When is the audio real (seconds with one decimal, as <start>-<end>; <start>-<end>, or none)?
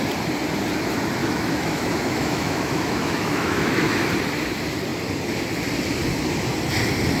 0.0-1.2; 4.1-7.2